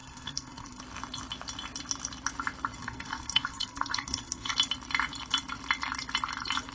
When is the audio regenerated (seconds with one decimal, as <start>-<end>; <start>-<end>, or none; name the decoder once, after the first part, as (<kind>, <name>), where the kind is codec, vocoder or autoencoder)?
0.0-0.8 (codec, SNAC); 2.8-4.5

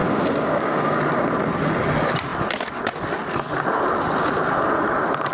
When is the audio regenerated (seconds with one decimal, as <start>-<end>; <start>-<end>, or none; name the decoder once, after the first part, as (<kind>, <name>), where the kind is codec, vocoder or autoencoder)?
0.0-1.0 (codec, DAC)

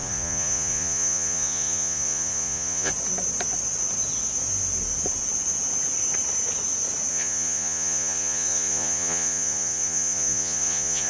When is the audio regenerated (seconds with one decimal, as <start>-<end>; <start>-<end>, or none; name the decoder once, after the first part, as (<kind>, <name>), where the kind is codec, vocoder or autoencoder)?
0.0-2.9 (vocoder, Vocos); 7.1-11.1